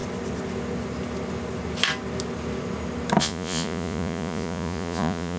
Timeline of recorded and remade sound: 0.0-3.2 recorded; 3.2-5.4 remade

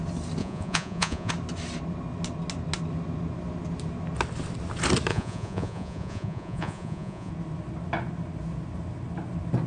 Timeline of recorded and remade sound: 0.0-0.4 recorded; 0.4-1.3 remade; 1.3-5.1 recorded; 5.1-7.3 remade; 7.3-9.7 recorded

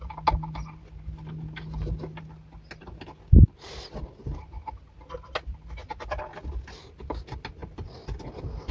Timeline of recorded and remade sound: 0.0-8.7 recorded

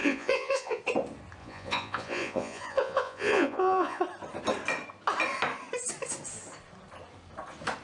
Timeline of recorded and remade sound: 0.0-0.8 remade; 0.8-1.4 recorded; 1.4-4.0 remade; 4.0-7.8 recorded